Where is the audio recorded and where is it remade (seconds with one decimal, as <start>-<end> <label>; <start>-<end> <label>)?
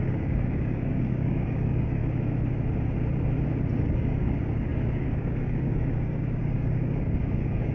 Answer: 0.0-2.0 remade; 2.0-3.8 recorded; 3.8-7.7 remade